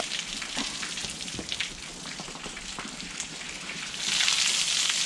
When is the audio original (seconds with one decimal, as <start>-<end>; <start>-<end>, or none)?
0.0-5.1